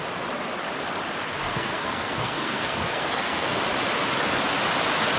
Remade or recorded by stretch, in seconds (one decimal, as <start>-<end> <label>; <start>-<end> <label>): 0.0-1.4 recorded; 1.4-3.6 remade; 3.6-5.2 recorded